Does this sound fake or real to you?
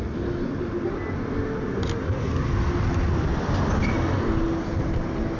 real